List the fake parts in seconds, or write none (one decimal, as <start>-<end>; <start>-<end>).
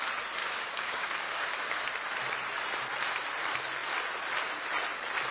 0.4-1.8